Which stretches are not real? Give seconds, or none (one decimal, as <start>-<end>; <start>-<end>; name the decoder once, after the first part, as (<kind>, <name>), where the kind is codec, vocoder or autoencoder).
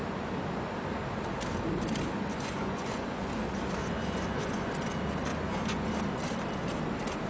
2.3-3.3 (vocoder, Vocos); 3.8-4.7; 5.3-5.9